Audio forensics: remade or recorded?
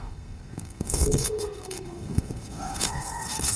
remade